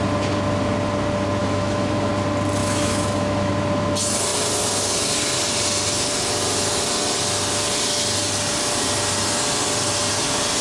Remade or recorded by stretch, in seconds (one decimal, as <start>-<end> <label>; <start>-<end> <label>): 0.0-1.4 recorded; 1.4-2.1 remade; 2.1-2.6 recorded; 2.6-3.5 remade; 3.5-10.6 recorded